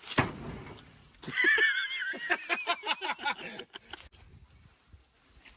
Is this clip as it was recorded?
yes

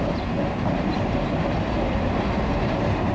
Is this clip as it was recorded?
no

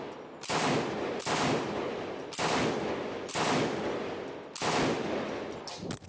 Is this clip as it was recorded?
yes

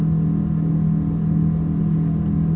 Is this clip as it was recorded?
yes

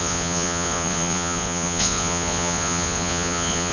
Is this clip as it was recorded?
no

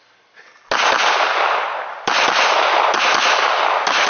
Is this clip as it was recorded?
yes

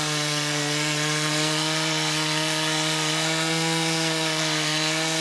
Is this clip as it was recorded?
no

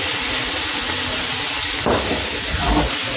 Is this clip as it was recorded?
yes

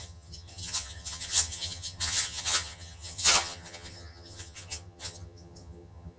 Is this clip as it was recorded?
no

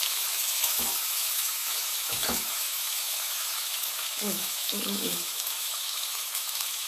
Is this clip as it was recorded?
no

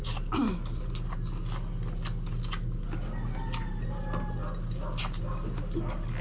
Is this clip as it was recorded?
yes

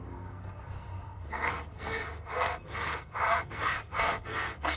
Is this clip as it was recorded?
no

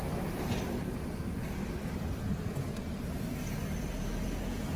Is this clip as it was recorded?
yes